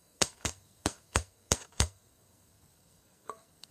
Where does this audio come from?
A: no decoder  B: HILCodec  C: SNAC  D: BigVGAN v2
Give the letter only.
C